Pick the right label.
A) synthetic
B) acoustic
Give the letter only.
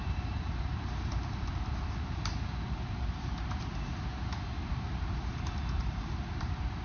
A